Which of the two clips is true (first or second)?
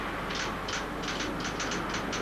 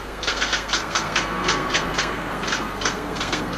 first